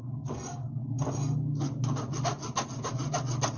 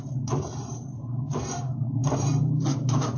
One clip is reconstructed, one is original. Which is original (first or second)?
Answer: first